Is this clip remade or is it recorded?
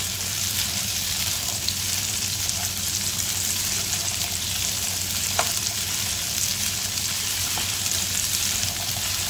remade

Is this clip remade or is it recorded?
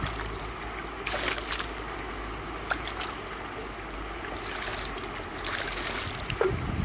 recorded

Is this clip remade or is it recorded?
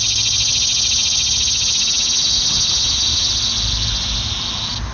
recorded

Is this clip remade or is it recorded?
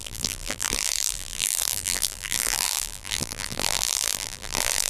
remade